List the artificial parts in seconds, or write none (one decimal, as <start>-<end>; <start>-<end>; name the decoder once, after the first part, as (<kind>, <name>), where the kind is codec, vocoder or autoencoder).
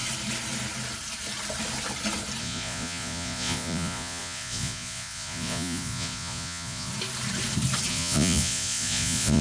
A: 2.4-6.9 (vocoder, Vocos); 7.9-9.4